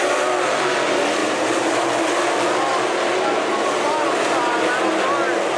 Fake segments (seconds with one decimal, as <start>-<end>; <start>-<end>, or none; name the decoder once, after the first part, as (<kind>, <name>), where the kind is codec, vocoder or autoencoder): 1.2-1.8 (vocoder, BigVGAN v2)